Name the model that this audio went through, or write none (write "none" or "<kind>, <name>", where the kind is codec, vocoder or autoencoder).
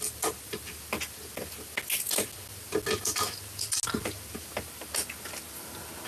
none